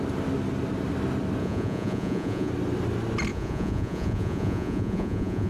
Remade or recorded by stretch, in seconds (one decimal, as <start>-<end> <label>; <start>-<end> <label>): 0.0-1.4 recorded; 1.4-2.5 remade; 2.5-3.3 recorded; 3.3-5.5 remade